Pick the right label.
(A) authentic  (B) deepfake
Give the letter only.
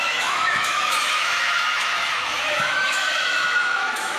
B